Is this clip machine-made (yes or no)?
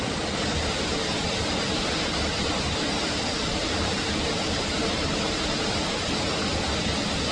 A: no